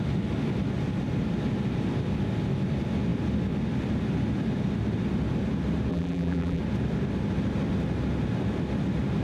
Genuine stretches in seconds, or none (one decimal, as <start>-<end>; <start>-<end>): 0.0-5.9; 6.6-9.2